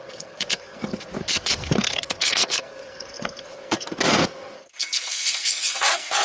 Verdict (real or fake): fake